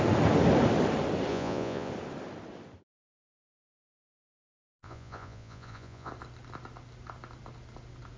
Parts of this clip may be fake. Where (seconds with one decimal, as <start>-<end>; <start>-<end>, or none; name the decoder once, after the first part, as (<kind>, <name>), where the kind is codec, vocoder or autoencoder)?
1.3-1.9 (vocoder, Vocos); 4.5-6.1